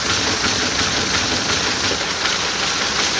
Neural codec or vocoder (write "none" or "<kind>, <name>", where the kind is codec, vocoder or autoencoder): none